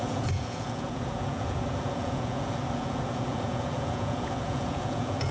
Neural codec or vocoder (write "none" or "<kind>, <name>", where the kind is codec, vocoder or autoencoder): vocoder, Vocos